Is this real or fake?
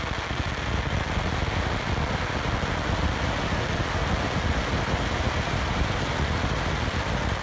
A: real